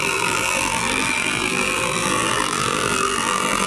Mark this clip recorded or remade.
remade